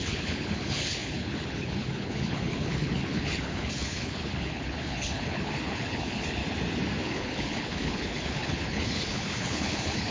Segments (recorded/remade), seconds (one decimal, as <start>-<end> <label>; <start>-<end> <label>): 0.0-6.4 remade; 6.4-7.0 recorded; 7.0-10.1 remade